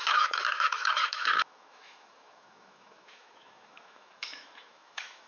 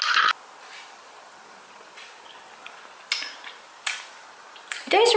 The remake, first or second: first